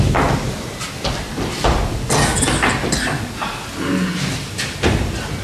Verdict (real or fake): real